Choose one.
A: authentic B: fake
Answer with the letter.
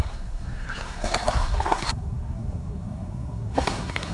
B